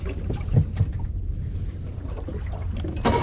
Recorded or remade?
recorded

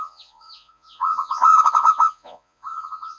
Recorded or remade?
remade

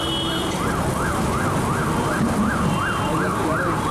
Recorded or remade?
recorded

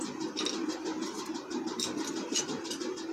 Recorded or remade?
recorded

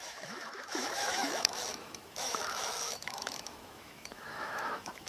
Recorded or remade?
remade